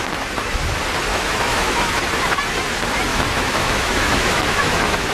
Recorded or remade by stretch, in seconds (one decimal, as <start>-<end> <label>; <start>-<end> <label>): 0.0-1.1 recorded; 1.1-1.9 remade; 1.9-3.1 recorded; 3.1-5.1 remade